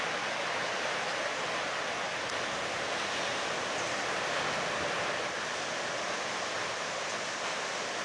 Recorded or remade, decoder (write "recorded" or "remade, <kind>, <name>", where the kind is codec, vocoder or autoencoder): recorded